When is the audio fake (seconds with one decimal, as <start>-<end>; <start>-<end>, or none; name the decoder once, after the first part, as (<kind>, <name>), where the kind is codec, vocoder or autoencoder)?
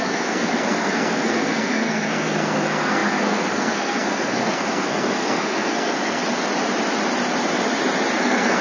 0.0-6.2 (codec, SNAC); 8.2-8.6